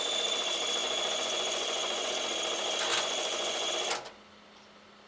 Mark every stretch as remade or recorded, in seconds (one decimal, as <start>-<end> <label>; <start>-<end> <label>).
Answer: 0.0-0.8 recorded; 0.8-2.1 remade; 2.1-2.9 recorded; 2.9-3.7 remade; 3.7-5.1 recorded